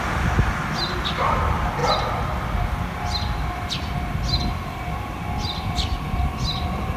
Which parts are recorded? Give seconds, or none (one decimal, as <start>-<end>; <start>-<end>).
0.0-7.0